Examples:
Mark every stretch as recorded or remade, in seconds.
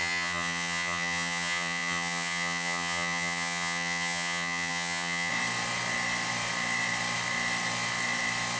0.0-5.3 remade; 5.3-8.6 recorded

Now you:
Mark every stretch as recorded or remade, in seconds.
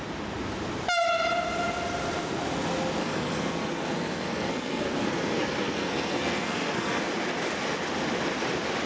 0.0-3.0 recorded; 3.0-7.0 remade; 7.0-8.9 recorded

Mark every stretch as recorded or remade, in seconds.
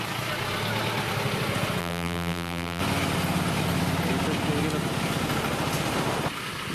0.0-1.8 recorded; 1.8-2.8 remade; 2.8-6.7 recorded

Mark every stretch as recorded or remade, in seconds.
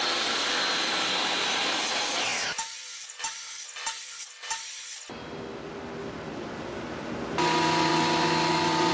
0.0-8.9 recorded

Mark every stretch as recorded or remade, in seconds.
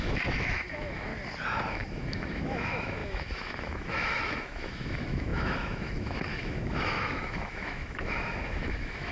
0.0-1.1 remade; 1.1-1.7 recorded; 1.7-9.1 remade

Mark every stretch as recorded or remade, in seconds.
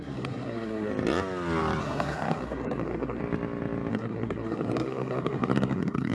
0.0-0.9 remade; 0.9-1.8 recorded; 1.8-3.2 remade; 3.2-3.9 recorded; 3.9-6.1 remade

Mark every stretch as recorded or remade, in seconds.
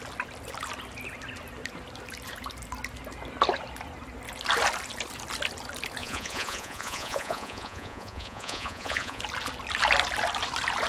0.0-6.0 recorded; 6.0-9.2 remade; 9.2-10.9 recorded